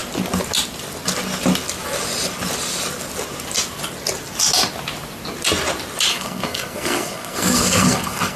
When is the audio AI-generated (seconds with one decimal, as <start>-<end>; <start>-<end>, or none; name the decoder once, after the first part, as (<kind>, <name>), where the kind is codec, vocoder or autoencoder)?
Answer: 6.1-8.4 (codec, SNAC)